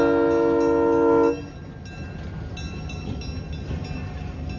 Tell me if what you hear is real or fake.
real